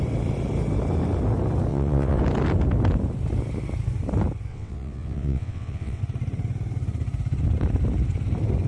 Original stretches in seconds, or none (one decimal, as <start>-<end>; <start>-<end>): 0.0-1.7; 2.2-4.5; 6.0-8.7

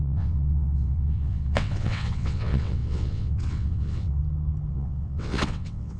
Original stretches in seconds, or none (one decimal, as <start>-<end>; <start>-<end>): 4.2-4.7